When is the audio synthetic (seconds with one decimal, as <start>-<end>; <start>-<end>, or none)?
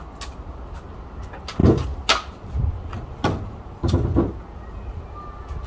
none